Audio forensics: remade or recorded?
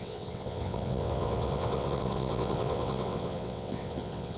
remade